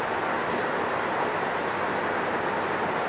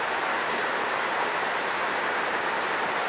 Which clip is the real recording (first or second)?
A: first